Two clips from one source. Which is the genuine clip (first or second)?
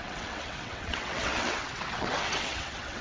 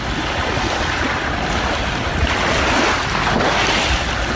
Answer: second